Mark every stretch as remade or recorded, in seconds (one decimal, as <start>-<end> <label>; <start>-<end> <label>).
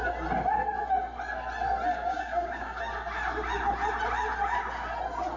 0.0-1.9 recorded; 1.9-2.8 remade; 2.8-5.4 recorded